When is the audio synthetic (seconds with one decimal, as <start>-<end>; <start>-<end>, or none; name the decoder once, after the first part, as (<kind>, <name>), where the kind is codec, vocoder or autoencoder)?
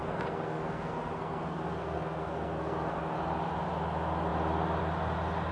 0.0-3.0 (codec, SNAC)